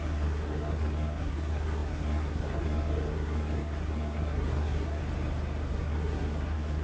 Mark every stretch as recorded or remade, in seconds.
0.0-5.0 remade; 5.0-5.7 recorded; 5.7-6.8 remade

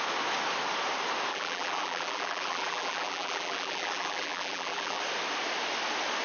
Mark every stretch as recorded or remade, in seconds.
0.0-1.3 recorded; 1.3-5.0 remade; 5.0-6.2 recorded

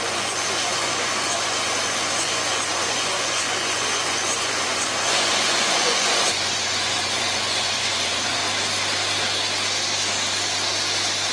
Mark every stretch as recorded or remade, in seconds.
0.0-8.4 remade; 8.4-11.3 recorded

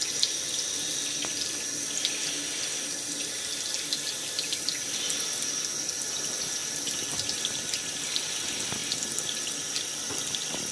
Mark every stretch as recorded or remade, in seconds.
0.0-10.7 recorded

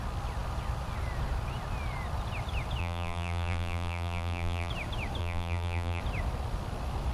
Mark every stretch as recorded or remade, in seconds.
0.0-2.8 recorded; 2.8-4.7 remade; 4.7-5.2 recorded; 5.2-6.0 remade; 6.0-7.1 recorded

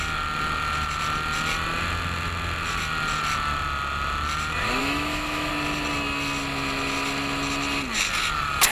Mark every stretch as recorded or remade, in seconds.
0.0-4.8 recorded; 4.8-5.5 remade; 5.5-8.7 recorded

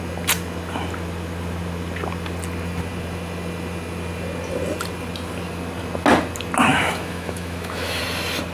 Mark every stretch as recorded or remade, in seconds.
0.0-6.7 recorded; 6.7-8.0 remade; 8.0-8.5 recorded